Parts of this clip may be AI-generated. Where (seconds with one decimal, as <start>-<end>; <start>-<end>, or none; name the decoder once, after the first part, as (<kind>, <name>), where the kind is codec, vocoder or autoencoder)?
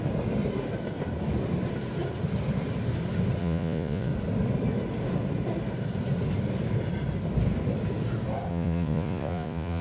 3.4-4.1 (vocoder, Vocos); 8.5-9.8